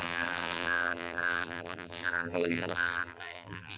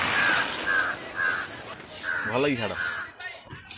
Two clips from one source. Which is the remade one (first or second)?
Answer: first